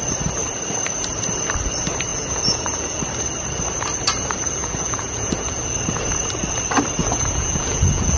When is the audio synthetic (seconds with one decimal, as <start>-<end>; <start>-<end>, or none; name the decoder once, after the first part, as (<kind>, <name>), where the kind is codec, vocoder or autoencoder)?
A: 2.1-3.0 (vocoder, Vocos); 4.6-5.6; 7.0-8.2